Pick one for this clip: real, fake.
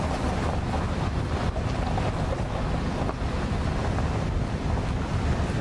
real